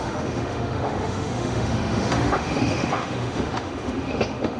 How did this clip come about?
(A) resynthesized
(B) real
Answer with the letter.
A